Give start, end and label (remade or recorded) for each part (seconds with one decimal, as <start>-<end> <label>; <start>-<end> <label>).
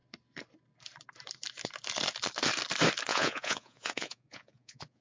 0.0-3.1 recorded; 3.1-5.0 remade